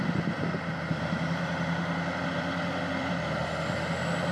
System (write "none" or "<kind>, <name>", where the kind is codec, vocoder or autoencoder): none